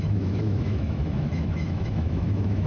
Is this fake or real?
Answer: fake